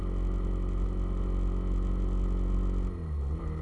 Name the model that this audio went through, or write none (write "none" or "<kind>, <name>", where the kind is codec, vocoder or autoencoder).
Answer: none